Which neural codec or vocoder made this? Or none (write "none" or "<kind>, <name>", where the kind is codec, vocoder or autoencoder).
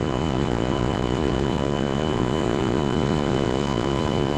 vocoder, Vocos